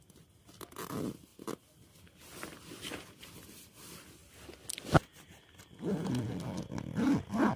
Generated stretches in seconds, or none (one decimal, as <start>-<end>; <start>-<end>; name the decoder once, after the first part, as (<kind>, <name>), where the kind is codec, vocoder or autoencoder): none